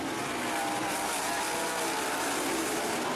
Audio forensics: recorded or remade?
recorded